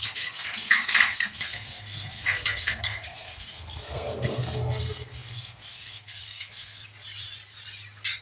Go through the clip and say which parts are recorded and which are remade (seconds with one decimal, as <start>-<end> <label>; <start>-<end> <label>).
0.0-6.8 remade; 6.8-8.2 recorded